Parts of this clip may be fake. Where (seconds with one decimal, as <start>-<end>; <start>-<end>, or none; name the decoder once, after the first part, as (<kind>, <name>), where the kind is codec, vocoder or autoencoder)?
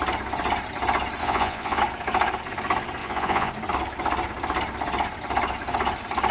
1.2-1.8 (vocoder, Vocos); 3.0-3.5